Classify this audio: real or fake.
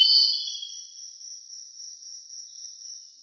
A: real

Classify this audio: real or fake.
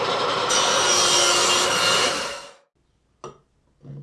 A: real